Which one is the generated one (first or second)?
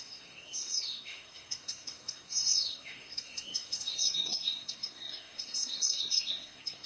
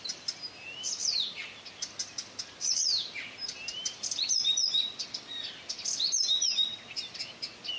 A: first